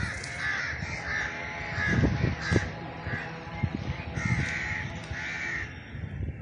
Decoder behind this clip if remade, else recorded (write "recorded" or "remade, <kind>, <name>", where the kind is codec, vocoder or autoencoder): recorded